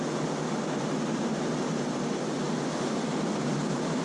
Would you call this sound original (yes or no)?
yes